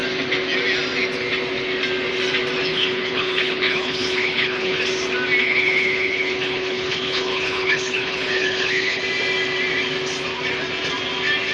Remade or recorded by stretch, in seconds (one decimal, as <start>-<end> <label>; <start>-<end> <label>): 0.0-2.7 recorded; 2.7-4.8 remade; 4.8-5.4 recorded; 5.4-9.0 remade; 9.0-11.5 recorded